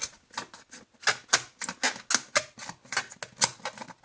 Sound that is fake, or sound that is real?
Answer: real